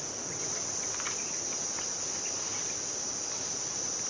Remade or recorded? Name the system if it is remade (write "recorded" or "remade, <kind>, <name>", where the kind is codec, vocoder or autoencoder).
remade, vocoder, BigVGAN v2